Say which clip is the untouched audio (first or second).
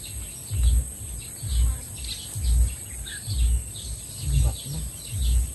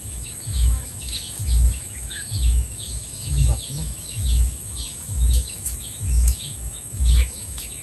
first